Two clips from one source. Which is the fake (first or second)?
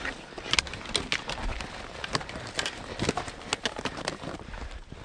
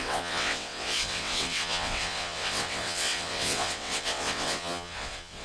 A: second